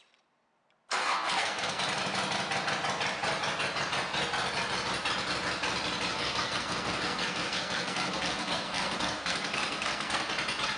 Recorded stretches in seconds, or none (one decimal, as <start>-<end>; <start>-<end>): 0.0-0.9; 1.8-6.1; 10.3-10.8